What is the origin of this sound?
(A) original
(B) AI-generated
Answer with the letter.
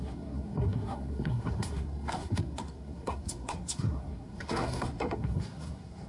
B